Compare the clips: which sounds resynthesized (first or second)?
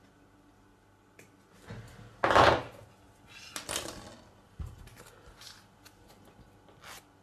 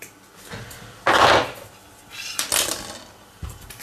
second